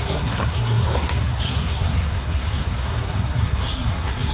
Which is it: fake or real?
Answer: fake